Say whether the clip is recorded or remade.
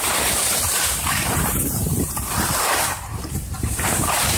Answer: remade